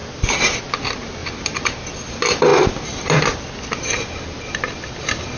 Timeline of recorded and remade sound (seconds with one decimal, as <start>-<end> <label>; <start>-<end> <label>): 0.0-5.4 recorded